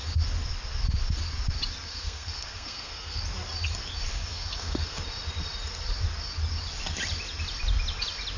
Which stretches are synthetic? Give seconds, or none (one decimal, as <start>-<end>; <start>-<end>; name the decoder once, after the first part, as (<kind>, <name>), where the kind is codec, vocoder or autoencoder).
1.9-3.2 (codec, SNAC); 4.1-5.0